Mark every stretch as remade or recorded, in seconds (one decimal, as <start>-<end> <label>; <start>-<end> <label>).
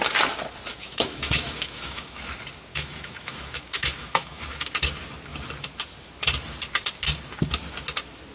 0.0-0.7 recorded; 0.7-2.2 remade; 2.2-2.7 recorded; 2.7-4.7 remade; 4.7-8.3 recorded